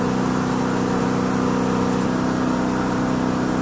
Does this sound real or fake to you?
real